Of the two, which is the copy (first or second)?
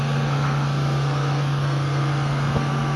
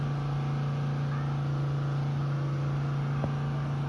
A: first